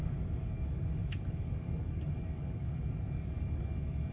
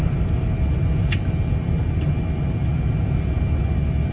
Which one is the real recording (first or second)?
second